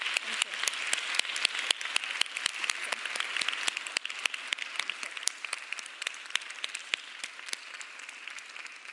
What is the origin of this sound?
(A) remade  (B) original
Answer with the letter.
B